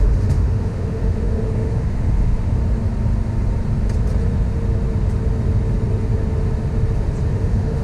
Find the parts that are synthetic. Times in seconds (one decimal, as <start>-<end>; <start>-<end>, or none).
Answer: 0.0-2.6; 7.3-7.8